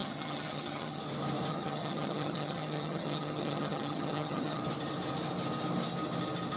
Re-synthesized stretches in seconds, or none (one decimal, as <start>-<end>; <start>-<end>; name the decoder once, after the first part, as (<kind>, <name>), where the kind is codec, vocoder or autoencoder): 0.0-1.0 (vocoder, HiFi-GAN); 1.5-4.6